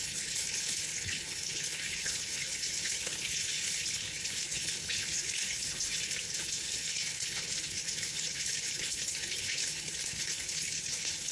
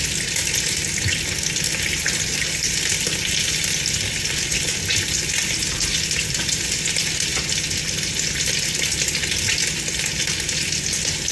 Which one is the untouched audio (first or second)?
second